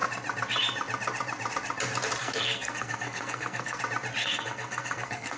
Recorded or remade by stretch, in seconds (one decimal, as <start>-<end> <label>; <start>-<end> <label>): 0.0-2.2 recorded; 2.2-3.8 remade; 3.8-4.2 recorded; 4.2-5.4 remade